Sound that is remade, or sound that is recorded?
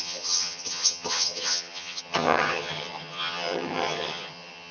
remade